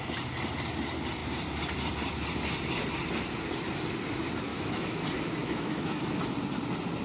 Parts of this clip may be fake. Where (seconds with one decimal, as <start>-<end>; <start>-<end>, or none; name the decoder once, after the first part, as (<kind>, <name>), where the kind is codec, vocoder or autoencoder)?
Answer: 4.5-5.0 (autoencoder, DAC-VAE); 5.4-6.2